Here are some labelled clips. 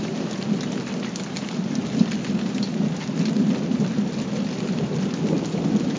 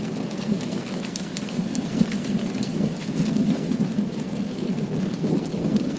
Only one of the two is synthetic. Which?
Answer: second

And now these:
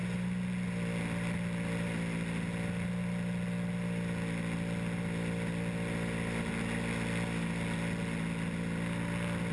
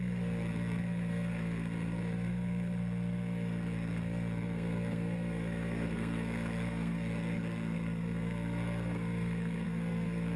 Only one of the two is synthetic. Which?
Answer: second